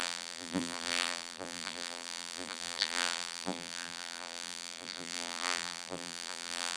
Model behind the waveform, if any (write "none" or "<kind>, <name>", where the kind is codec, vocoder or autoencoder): vocoder, BigVGAN v2